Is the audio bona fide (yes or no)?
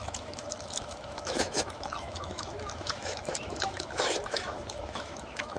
no